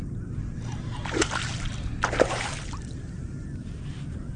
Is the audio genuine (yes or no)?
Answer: yes